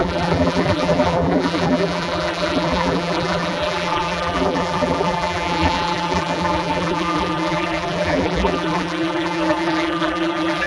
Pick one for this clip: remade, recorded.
remade